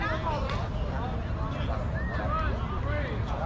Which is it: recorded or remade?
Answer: recorded